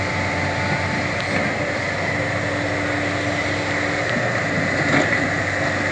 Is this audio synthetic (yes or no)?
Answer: no